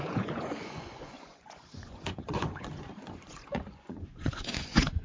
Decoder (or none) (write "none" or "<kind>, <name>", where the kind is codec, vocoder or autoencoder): vocoder, Vocos